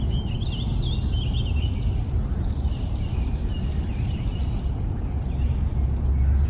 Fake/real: real